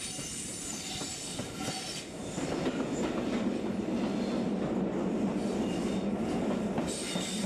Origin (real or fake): real